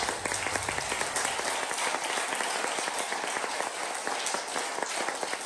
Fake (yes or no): no